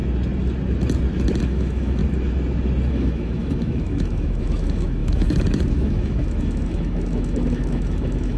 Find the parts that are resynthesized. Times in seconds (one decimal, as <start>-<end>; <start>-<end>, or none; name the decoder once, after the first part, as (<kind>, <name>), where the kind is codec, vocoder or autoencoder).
1.4-2.0 (autoencoder, DAC-VAE); 2.9-8.4